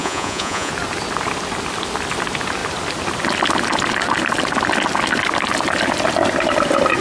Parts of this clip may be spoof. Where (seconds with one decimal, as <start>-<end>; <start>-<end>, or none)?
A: 0.0-0.7